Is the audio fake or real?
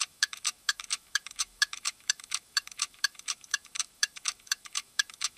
fake